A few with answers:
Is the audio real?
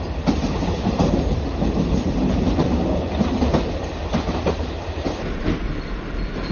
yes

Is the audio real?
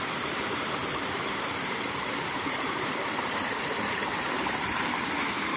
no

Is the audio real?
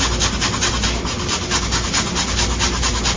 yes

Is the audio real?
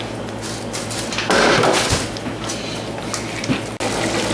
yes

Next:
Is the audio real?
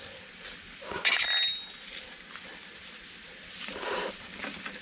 yes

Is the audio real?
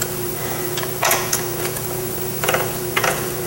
no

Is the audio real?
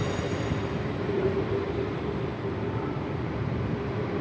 no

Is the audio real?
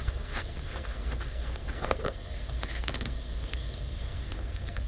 no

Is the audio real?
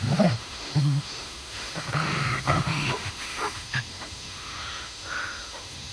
no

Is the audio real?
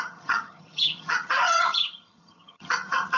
no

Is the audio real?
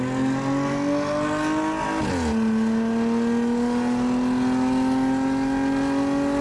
yes